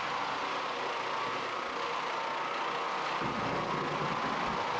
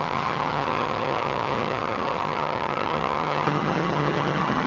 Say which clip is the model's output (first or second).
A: second